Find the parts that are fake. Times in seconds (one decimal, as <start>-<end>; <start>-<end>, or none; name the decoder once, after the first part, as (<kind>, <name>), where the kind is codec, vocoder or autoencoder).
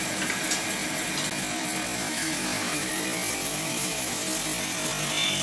2.0-2.9 (autoencoder, DAC-VAE); 3.5-4.2